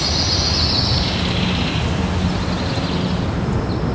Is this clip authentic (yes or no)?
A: yes